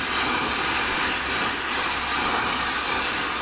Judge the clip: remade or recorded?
recorded